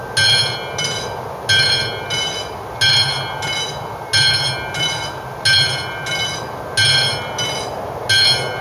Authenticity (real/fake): real